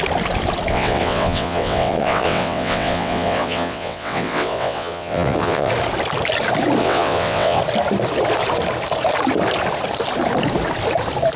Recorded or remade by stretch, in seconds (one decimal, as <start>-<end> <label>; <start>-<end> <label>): 0.0-0.7 recorded; 0.7-5.7 remade; 5.7-6.8 recorded; 6.8-7.6 remade; 7.6-11.4 recorded

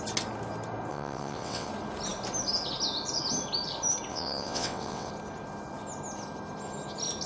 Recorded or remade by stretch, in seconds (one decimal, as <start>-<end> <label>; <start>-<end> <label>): 0.0-0.9 recorded; 0.9-1.7 remade; 1.7-4.1 recorded; 4.1-5.1 remade; 5.1-7.3 recorded